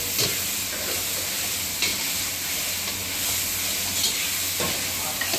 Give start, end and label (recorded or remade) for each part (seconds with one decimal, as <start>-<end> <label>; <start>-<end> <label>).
0.0-1.9 recorded; 1.9-2.5 remade; 2.5-5.4 recorded

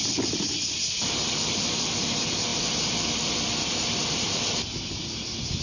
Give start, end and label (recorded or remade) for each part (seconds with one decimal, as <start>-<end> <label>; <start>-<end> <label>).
0.0-5.6 recorded

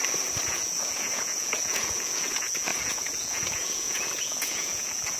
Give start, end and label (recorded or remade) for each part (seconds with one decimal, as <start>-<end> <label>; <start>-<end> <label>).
0.0-0.5 recorded; 0.5-5.2 remade

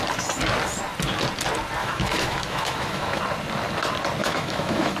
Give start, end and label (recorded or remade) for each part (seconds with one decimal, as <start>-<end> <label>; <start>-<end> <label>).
0.0-1.8 recorded; 1.8-3.2 remade; 3.2-4.2 recorded; 4.2-5.0 remade

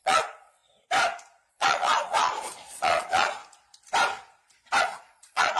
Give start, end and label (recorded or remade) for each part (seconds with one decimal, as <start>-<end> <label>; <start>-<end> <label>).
0.0-0.6 remade; 0.6-1.5 recorded; 1.5-3.4 remade; 3.4-4.8 recorded; 4.8-5.6 remade

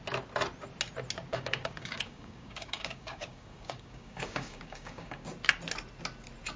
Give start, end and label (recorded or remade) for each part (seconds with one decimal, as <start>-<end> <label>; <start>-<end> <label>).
0.0-1.3 recorded; 1.3-5.3 remade; 5.3-6.6 recorded